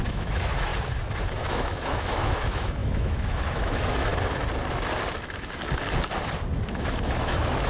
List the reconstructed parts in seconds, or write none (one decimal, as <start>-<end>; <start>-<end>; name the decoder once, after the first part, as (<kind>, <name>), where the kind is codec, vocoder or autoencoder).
0.0-0.7 (autoencoder, DAC-VAE); 1.4-4.1; 6.8-7.7